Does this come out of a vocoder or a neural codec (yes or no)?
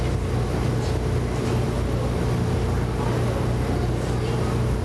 no